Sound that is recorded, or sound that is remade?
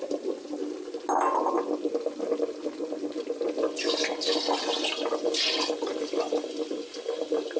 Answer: recorded